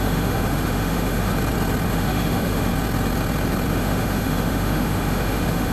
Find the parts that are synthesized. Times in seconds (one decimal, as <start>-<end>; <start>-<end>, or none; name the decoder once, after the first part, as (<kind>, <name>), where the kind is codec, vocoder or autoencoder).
0.0-1.3 (autoencoder, DAC-VAE); 1.9-2.7; 3.7-5.7